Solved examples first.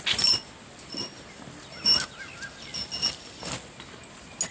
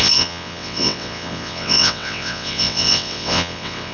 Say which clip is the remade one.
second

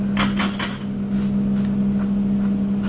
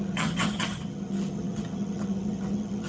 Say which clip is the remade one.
second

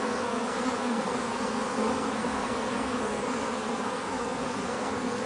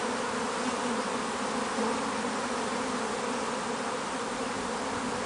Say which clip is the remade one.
first